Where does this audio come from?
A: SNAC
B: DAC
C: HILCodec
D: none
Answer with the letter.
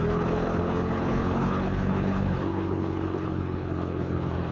C